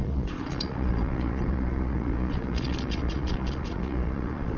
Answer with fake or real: fake